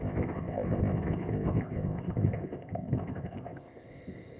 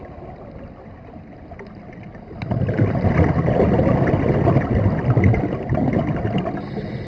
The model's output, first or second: first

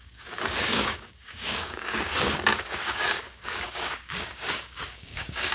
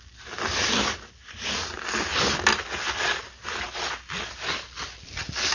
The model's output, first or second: first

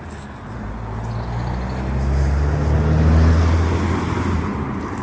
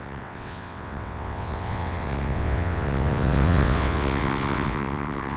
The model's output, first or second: second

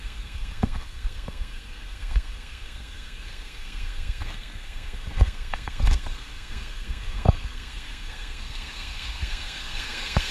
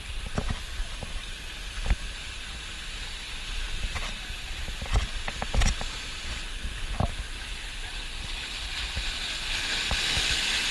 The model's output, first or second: first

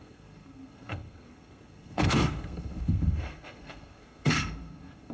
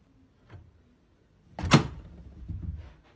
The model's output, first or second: first